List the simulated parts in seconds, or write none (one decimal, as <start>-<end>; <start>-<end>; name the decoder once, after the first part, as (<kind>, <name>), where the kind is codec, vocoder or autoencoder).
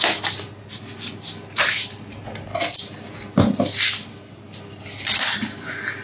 none